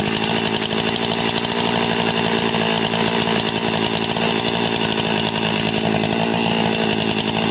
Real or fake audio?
real